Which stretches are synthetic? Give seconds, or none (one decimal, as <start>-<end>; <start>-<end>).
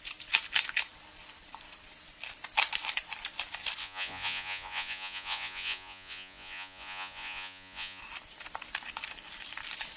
3.8-8.0